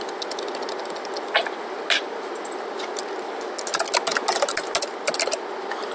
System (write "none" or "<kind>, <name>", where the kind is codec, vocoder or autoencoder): none